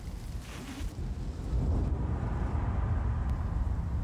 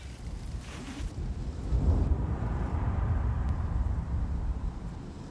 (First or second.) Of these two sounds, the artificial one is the second